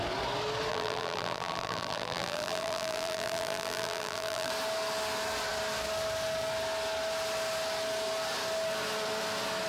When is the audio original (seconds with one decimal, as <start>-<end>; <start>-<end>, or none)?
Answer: 0.0-0.7; 4.5-9.7